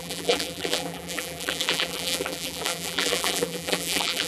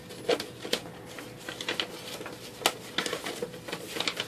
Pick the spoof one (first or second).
first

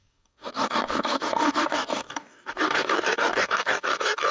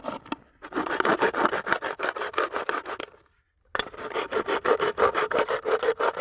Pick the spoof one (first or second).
first